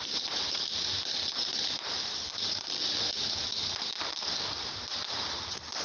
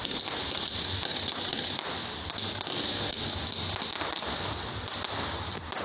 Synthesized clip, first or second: first